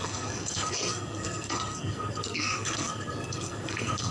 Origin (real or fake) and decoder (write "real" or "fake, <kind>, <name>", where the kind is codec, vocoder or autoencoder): fake, codec, SNAC